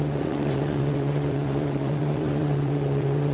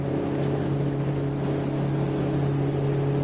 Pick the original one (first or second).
second